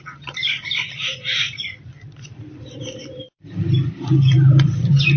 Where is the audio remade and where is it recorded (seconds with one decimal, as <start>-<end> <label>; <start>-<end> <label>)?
0.0-5.2 remade